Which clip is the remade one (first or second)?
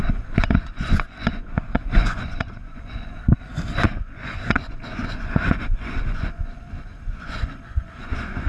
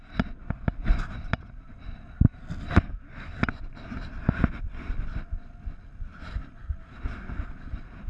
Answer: first